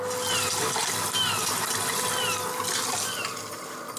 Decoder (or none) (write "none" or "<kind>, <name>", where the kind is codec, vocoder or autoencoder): none